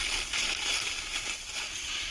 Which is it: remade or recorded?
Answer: recorded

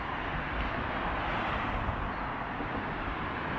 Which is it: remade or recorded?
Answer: recorded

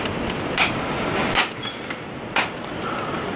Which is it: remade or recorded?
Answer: recorded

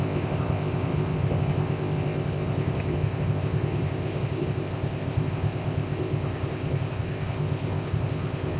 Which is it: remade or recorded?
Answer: remade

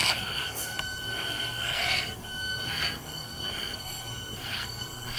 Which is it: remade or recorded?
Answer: remade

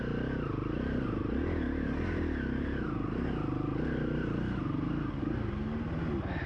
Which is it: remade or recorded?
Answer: recorded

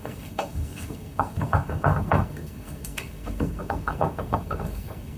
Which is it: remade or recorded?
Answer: remade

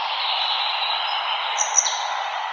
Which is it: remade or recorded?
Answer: recorded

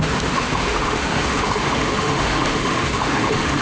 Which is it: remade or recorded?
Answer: remade